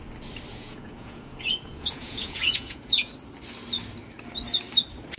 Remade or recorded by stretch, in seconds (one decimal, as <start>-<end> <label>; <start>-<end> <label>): 0.0-0.5 recorded; 0.5-3.1 remade; 3.1-5.2 recorded